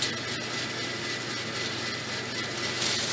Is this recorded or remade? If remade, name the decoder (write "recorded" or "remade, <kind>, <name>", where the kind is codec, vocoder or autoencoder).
recorded